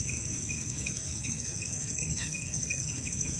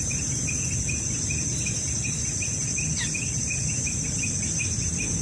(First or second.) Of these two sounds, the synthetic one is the first